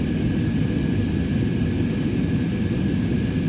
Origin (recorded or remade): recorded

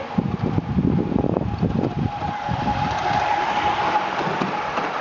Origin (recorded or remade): recorded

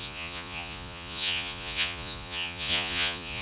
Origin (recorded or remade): remade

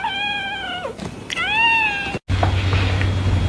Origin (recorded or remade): recorded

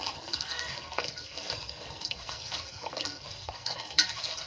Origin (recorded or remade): remade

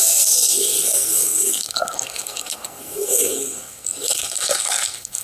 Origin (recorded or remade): remade